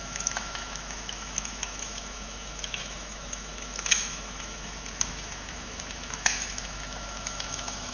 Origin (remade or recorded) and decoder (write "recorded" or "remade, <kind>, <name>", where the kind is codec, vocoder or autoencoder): remade, autoencoder, DAC-VAE